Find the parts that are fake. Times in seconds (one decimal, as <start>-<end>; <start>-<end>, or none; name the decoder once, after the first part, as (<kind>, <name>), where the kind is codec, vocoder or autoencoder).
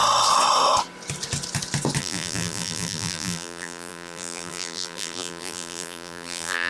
2.0-6.7 (vocoder, BigVGAN v2)